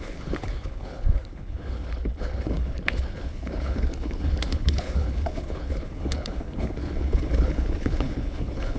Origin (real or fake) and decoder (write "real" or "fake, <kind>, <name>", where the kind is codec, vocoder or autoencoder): fake, codec, HILCodec